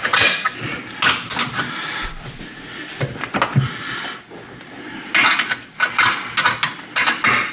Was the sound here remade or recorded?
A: recorded